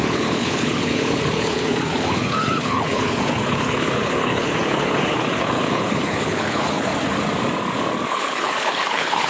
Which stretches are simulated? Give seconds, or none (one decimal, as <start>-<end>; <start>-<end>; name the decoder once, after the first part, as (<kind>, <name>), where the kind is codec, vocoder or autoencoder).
0.0-6.9 (codec, HILCodec); 8.1-9.3